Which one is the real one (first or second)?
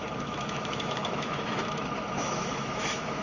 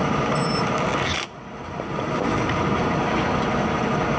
second